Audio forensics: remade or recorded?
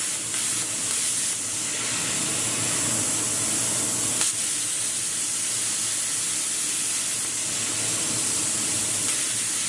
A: recorded